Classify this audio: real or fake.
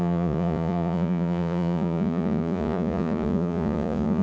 fake